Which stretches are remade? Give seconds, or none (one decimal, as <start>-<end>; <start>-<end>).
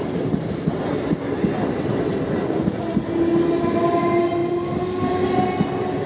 none